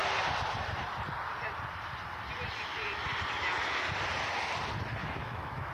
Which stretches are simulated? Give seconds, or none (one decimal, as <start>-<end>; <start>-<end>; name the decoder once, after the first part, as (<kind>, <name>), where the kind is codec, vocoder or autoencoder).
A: 5.0-5.7 (autoencoder, DAC-VAE)